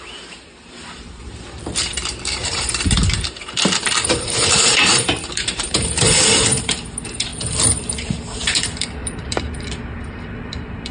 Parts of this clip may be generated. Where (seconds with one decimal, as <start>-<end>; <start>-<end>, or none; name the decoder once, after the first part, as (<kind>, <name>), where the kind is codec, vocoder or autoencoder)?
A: 0.0-7.3 (vocoder, BigVGAN v2); 7.8-10.9